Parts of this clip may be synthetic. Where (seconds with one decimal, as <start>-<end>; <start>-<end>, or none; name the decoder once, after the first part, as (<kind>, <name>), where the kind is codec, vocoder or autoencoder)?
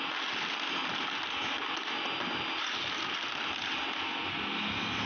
none